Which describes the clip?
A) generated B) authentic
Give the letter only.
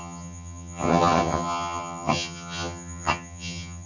A